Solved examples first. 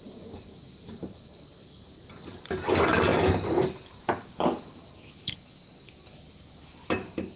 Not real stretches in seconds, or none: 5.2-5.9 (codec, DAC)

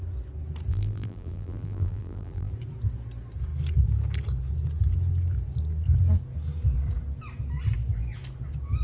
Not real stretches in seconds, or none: 0.7-2.5 (vocoder, BigVGAN v2)

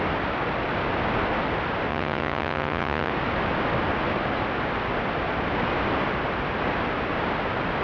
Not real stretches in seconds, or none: 1.9-3.1 (vocoder, HiFi-GAN)